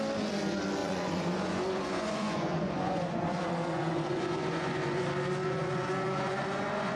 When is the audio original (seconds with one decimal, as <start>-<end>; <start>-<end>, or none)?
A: 0.0-0.8; 5.0-5.4